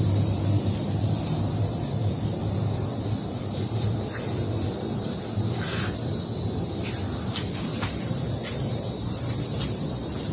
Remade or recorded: remade